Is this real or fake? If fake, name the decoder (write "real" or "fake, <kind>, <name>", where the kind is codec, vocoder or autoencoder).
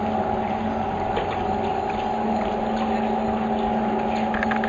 real